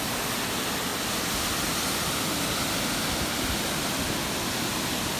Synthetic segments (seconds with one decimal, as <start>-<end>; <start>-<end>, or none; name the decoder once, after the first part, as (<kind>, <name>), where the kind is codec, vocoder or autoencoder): 0.9-4.0 (vocoder, BigVGAN v2)

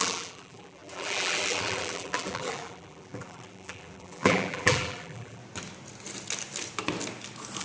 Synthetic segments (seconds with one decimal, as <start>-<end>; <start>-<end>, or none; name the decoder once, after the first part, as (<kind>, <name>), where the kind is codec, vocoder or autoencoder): 0.0-5.4 (vocoder, BigVGAN v2)

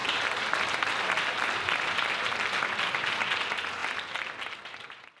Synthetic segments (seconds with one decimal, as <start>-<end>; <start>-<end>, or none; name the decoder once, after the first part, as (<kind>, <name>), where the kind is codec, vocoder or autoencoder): none

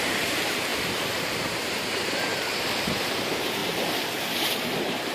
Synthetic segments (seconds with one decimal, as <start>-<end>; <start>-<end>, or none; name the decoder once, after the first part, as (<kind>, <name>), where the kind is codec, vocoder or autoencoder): 0.0-2.3 (vocoder, BigVGAN v2); 2.9-3.6; 4.2-5.1